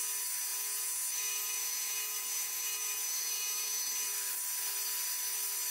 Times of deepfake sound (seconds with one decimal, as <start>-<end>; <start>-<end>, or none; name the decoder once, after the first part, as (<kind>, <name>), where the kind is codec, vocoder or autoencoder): 0.5-3.9 (vocoder, Vocos)